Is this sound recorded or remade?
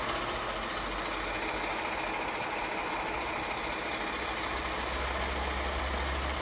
recorded